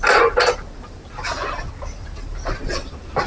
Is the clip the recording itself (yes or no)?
yes